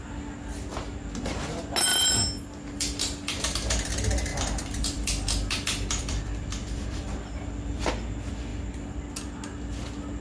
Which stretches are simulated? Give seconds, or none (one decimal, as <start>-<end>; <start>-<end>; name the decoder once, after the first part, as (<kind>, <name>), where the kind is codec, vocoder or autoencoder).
1.9-3.9 (vocoder, BigVGAN v2); 4.3-7.9; 8.5-9.1